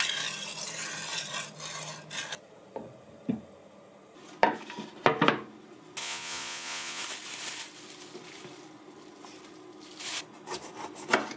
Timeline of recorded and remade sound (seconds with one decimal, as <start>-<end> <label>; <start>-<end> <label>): 0.0-6.0 recorded; 6.0-7.0 remade; 7.0-11.4 recorded